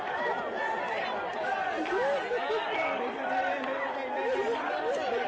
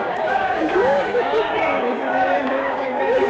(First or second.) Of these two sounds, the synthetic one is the second